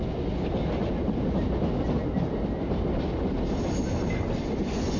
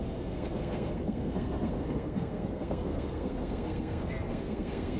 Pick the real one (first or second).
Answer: first